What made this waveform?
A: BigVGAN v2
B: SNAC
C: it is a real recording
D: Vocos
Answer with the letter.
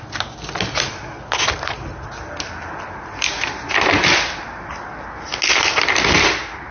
C